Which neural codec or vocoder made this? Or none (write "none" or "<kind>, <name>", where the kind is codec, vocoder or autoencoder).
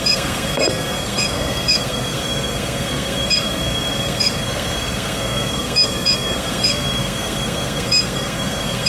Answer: codec, SNAC